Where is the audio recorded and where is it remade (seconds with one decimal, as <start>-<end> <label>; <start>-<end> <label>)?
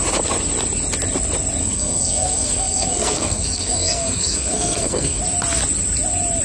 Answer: 0.0-1.6 recorded; 1.6-5.2 remade; 5.2-6.4 recorded